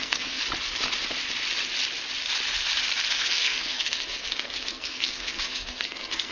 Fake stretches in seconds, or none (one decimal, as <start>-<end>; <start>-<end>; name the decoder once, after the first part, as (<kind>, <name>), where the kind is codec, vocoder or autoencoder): 0.0-0.4 (codec, SNAC); 3.1-6.3